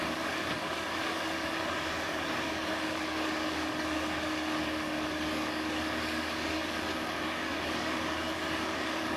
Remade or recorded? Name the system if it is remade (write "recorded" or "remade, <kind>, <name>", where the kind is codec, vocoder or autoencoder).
remade, codec, DAC